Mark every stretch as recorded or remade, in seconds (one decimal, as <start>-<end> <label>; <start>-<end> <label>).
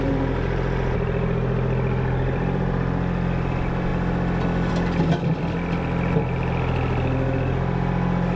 0.0-8.4 recorded